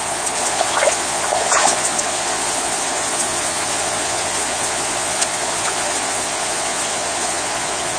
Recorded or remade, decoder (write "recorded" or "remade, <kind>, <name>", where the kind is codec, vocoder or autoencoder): remade, vocoder, Vocos